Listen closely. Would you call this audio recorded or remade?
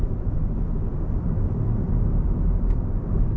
remade